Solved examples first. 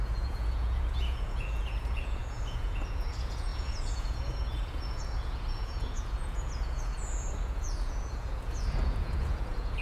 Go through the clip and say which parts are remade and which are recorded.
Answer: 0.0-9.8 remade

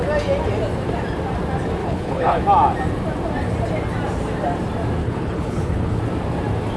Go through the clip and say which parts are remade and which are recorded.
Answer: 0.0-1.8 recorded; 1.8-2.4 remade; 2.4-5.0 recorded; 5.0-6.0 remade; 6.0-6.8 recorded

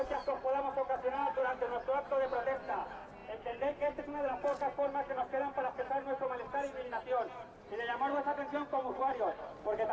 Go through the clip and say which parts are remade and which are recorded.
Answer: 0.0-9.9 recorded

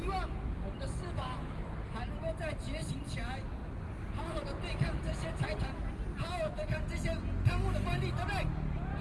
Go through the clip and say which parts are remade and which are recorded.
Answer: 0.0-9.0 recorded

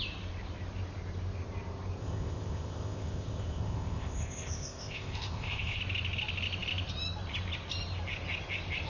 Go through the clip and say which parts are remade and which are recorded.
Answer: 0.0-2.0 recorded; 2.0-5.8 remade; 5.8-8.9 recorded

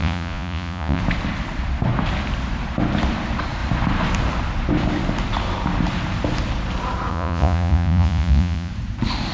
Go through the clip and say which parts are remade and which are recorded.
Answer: 0.0-1.0 remade; 1.0-7.1 recorded; 7.1-8.7 remade; 8.7-9.3 recorded